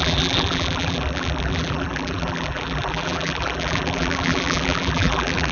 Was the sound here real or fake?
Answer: fake